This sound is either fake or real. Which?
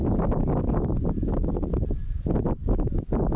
real